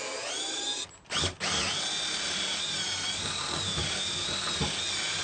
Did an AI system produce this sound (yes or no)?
no